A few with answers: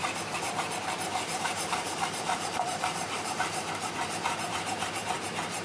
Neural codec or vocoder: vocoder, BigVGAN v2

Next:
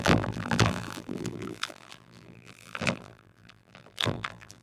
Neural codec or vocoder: vocoder, BigVGAN v2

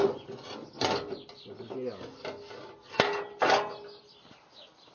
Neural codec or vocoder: none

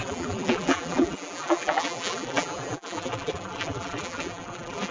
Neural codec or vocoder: vocoder, BigVGAN v2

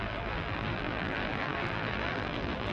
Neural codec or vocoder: vocoder, BigVGAN v2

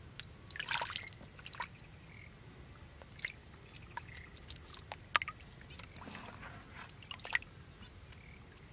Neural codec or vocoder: none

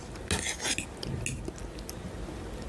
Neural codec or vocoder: none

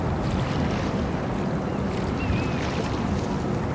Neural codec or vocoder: none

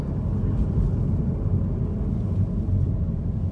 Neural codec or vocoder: none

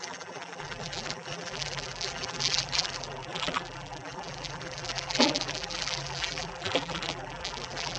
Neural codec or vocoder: vocoder, BigVGAN v2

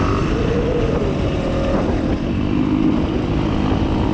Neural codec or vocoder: none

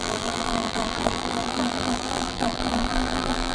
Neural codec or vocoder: vocoder, BigVGAN v2